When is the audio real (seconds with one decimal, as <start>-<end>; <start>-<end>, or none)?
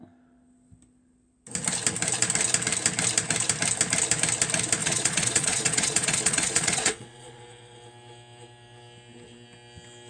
0.0-4.8; 7.4-10.1